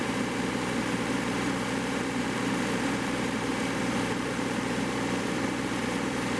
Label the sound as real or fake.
fake